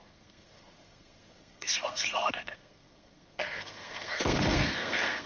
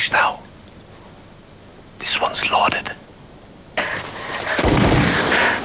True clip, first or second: second